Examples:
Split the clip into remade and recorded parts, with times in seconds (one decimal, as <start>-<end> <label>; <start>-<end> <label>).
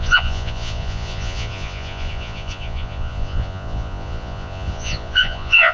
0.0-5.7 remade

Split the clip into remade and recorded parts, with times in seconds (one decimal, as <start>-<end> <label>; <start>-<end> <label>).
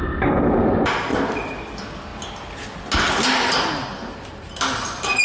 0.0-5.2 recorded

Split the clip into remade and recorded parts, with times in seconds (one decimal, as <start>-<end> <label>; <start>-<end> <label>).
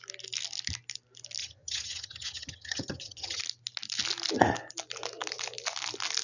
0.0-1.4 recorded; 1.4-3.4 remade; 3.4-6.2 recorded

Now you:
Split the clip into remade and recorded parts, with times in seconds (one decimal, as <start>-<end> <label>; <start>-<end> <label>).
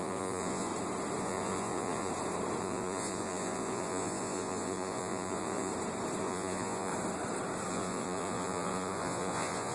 0.0-0.7 remade; 0.7-1.2 recorded; 1.2-2.1 remade; 2.1-2.6 recorded; 2.6-5.7 remade; 5.7-6.2 recorded; 6.2-6.9 remade; 6.9-7.7 recorded; 7.7-9.7 remade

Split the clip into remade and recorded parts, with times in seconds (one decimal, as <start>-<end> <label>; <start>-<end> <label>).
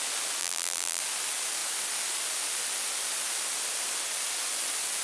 0.0-0.4 recorded; 0.4-1.0 remade; 1.0-5.0 recorded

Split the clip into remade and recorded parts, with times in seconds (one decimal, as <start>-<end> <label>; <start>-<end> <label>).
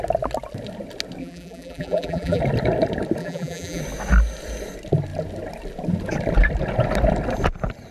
0.0-1.2 recorded; 1.2-2.4 remade; 2.4-3.2 recorded; 3.2-3.8 remade; 3.8-7.9 recorded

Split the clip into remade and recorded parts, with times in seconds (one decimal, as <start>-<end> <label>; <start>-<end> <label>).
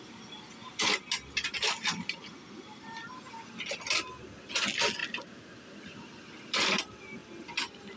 0.0-5.0 recorded; 5.0-6.8 remade; 6.8-7.2 recorded; 7.2-8.0 remade